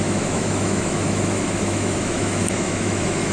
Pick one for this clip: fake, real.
fake